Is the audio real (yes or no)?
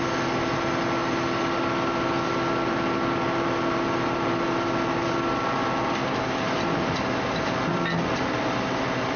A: yes